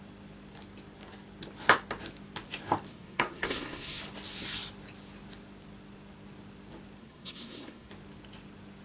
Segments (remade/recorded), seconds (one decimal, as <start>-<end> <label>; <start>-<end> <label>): 0.0-2.9 recorded; 2.9-4.0 remade; 4.0-7.0 recorded; 7.0-7.9 remade; 7.9-8.8 recorded